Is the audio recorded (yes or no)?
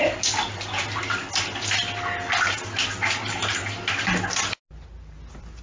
yes